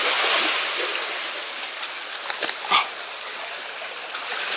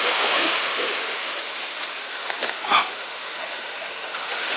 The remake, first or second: second